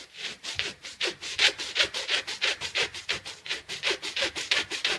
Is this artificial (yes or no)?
yes